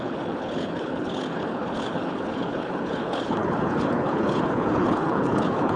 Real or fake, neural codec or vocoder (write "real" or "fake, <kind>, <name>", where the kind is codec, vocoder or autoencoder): fake, codec, HILCodec